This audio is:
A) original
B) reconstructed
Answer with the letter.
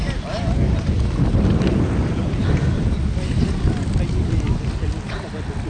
A